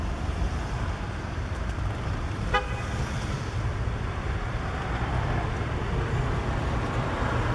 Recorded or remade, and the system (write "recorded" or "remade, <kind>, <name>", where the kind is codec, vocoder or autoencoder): remade, vocoder, BigVGAN v2